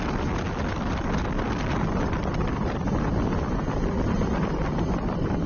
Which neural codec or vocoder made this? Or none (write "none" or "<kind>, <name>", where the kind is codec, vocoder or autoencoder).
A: none